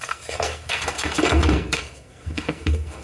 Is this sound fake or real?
fake